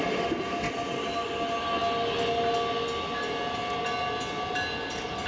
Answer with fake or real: real